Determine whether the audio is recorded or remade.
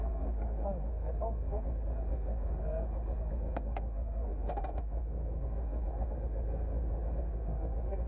remade